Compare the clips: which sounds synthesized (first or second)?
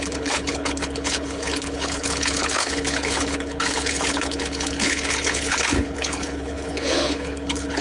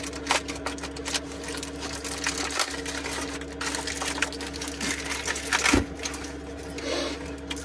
first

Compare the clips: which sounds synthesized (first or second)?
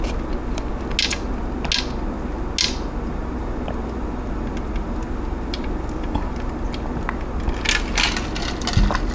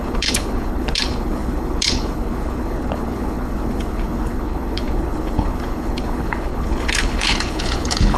second